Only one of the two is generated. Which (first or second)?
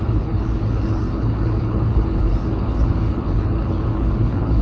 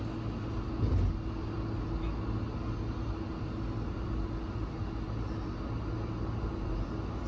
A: first